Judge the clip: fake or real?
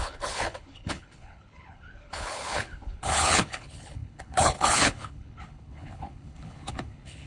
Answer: fake